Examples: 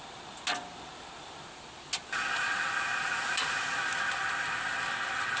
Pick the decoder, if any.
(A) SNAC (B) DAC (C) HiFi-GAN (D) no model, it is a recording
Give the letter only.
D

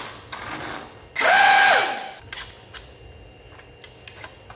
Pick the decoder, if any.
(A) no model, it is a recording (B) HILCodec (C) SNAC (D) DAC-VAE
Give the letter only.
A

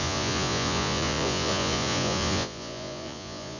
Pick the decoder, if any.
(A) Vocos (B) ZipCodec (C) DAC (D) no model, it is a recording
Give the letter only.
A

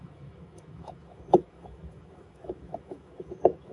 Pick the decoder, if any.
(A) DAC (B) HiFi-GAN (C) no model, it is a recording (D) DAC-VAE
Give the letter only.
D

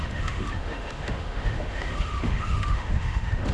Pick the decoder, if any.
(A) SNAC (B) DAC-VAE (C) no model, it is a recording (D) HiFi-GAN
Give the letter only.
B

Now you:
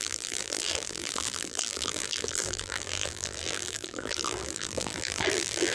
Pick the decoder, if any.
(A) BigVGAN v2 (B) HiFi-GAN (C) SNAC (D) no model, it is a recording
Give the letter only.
A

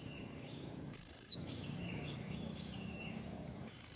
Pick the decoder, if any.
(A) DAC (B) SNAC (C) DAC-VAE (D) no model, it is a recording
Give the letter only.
A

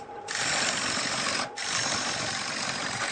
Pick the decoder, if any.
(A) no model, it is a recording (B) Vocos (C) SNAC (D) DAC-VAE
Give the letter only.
A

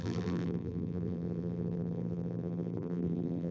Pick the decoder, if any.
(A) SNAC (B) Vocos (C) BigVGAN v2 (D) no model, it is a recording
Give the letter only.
C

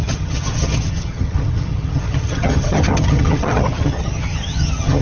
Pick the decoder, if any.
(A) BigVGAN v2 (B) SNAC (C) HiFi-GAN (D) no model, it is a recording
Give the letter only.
C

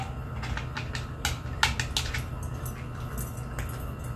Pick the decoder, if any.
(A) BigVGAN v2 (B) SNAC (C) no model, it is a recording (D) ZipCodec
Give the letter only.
C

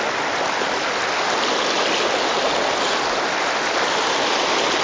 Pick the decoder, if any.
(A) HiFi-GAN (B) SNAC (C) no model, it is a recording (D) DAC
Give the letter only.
C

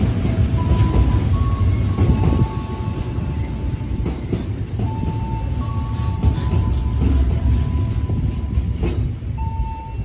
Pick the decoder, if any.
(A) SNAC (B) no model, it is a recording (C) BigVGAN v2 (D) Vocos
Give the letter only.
B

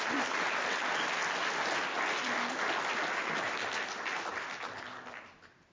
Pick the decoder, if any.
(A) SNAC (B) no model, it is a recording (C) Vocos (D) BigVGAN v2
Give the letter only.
B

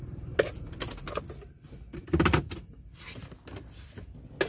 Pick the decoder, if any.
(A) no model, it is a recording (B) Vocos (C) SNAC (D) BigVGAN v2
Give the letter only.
A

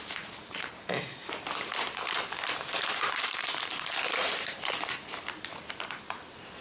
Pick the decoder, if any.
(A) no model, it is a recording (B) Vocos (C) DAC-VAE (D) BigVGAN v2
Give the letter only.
D